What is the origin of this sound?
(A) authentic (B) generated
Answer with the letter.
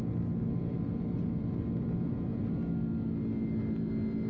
A